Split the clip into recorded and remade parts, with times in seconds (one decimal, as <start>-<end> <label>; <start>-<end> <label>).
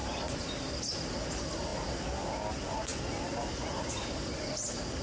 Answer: 0.0-5.0 recorded